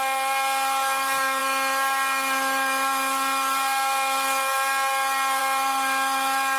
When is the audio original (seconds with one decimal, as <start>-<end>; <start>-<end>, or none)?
0.0-6.6